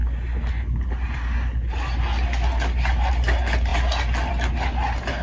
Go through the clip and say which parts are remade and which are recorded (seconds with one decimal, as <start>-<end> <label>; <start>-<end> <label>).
0.0-5.2 recorded